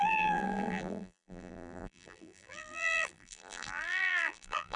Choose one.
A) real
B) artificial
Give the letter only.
B